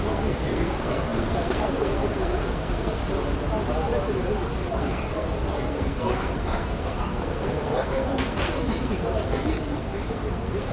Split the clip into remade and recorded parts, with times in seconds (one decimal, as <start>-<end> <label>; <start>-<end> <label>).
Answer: 0.0-3.0 remade; 3.0-4.7 recorded; 4.7-10.7 remade